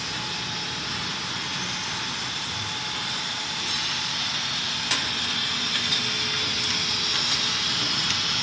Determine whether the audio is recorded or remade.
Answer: recorded